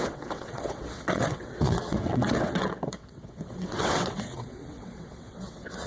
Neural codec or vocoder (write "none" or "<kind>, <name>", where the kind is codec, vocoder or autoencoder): vocoder, WaveNeXt